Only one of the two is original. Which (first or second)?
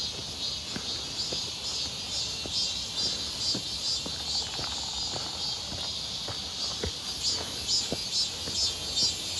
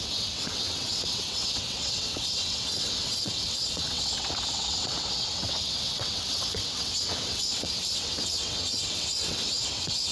first